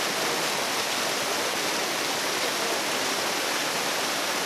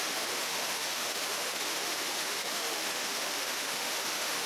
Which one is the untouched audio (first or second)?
first